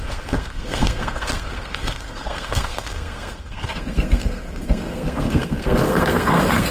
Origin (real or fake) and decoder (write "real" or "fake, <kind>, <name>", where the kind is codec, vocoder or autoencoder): fake, codec, SNAC